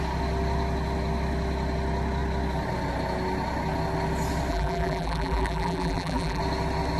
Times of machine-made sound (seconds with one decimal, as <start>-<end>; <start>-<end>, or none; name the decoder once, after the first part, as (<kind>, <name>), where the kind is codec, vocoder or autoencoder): 4.5-6.4 (vocoder, BigVGAN v2)

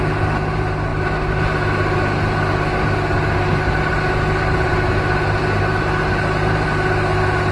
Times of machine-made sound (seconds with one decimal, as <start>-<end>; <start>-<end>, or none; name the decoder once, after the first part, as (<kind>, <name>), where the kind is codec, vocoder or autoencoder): none

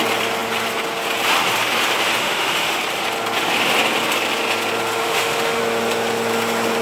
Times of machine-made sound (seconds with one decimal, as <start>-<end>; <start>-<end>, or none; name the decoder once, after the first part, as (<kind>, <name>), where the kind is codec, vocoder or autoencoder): 2.2-2.8 (autoencoder, DAC-VAE); 5.0-5.6

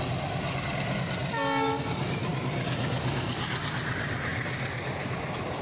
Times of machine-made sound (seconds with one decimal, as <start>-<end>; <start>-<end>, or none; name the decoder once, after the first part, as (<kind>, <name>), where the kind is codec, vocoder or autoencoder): 0.0-1.2 (vocoder, BigVGAN v2); 1.8-5.6

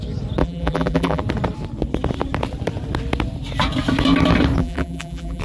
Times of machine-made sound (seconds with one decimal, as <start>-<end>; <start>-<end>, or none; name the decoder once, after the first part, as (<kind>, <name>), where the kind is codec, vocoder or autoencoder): 0.4-1.2 (vocoder, BigVGAN v2); 4.6-5.4

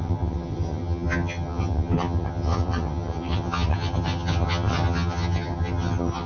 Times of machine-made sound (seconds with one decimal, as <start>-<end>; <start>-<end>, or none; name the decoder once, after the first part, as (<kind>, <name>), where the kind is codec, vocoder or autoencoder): 0.0-6.3 (vocoder, HiFi-GAN)

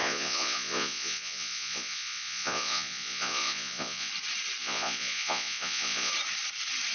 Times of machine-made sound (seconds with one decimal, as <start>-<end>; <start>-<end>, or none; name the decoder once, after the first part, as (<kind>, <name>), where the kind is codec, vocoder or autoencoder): 0.0-4.1 (vocoder, Vocos); 4.6-6.1

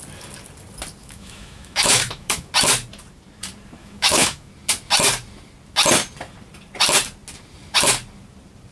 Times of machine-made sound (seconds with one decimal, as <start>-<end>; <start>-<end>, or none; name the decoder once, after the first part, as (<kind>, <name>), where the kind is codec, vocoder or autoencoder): 1.0-2.5 (autoencoder, DAC-VAE); 3.8-4.5